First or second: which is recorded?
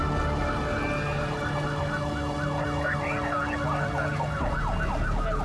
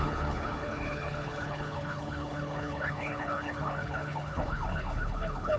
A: first